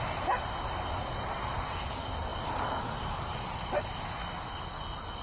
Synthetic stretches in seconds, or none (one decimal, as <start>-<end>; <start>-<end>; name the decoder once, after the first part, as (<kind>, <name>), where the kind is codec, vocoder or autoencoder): none